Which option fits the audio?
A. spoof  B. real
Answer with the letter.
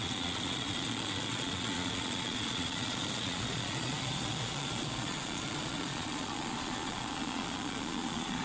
A